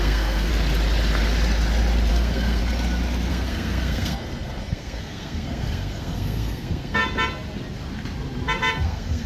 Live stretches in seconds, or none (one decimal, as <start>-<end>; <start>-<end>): 0.5-2.1; 2.6-3.3; 7.0-8.7